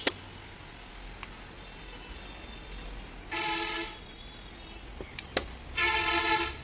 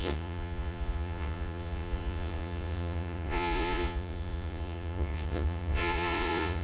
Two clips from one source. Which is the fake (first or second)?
second